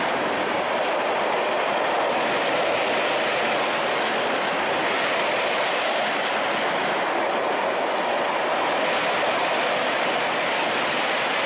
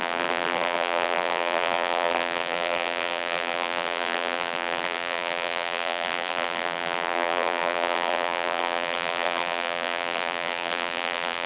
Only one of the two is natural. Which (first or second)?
first